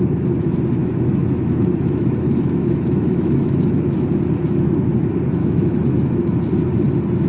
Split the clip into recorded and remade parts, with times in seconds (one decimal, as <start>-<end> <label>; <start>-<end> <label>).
0.0-0.8 recorded; 0.8-3.9 remade; 3.9-5.4 recorded; 5.4-6.3 remade; 6.3-7.3 recorded